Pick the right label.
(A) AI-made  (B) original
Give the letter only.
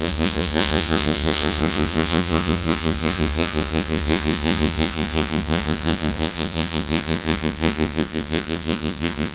A